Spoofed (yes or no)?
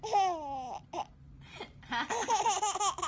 no